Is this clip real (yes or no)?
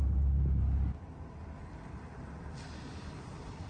yes